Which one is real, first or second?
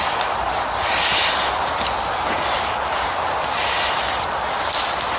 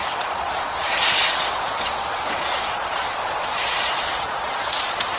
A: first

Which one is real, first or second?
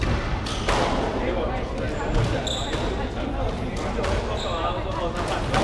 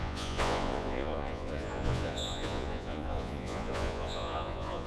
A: first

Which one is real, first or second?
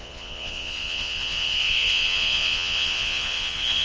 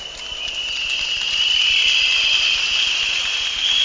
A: second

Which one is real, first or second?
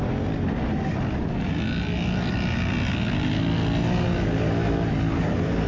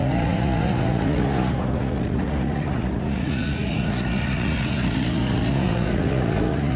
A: first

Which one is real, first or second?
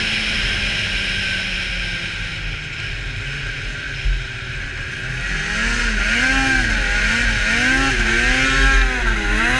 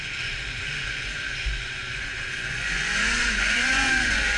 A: first